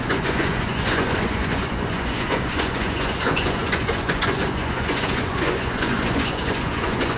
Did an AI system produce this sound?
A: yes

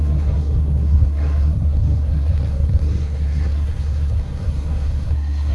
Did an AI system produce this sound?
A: yes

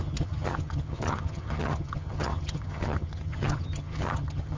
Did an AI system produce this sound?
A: yes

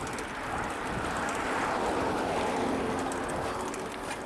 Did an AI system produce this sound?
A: no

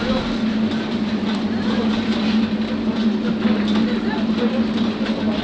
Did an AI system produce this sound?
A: no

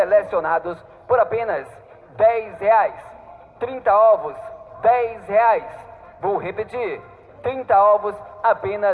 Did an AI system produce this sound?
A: no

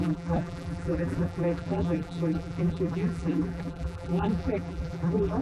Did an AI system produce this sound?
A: yes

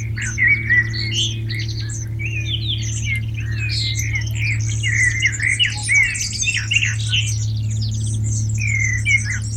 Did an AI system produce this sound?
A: no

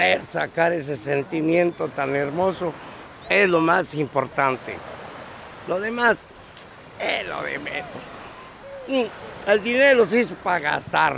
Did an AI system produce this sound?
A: no